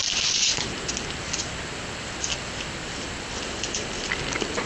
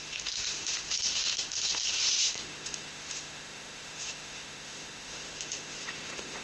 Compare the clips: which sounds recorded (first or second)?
first